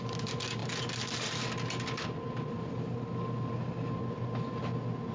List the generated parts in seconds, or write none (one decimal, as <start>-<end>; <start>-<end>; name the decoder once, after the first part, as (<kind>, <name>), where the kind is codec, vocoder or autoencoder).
none